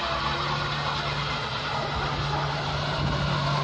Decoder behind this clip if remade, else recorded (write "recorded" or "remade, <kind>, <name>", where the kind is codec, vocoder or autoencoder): recorded